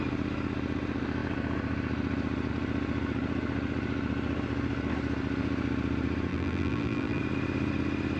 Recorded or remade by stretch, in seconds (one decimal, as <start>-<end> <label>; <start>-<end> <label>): 0.0-6.3 recorded; 6.3-7.2 remade; 7.2-8.2 recorded